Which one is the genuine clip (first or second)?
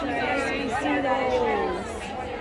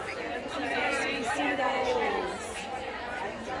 first